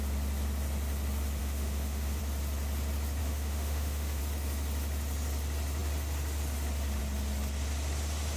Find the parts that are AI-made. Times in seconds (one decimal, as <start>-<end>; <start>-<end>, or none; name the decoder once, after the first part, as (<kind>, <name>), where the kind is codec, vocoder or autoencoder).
1.4-2.2 (autoencoder, DAC-VAE); 3.2-4.2